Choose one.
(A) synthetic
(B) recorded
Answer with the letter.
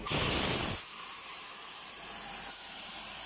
A